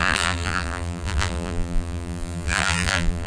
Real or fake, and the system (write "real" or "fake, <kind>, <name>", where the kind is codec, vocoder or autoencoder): fake, vocoder, BigVGAN v2